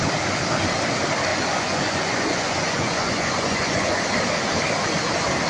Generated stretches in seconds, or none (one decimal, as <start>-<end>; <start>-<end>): 1.3-4.0

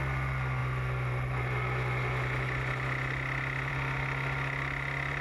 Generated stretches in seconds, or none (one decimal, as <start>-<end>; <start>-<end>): none